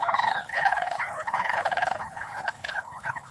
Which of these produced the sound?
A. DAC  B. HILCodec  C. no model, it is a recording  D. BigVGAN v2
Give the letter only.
B